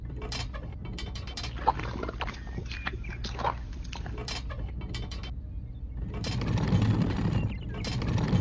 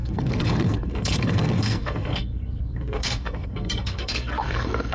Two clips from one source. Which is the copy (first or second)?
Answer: second